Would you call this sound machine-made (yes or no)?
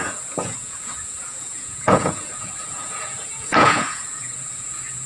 yes